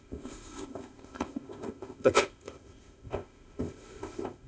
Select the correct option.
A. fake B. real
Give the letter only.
A